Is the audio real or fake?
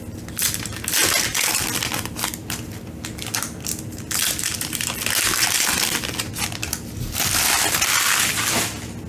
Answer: real